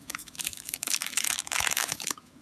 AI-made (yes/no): yes